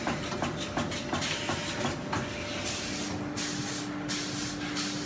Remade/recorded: recorded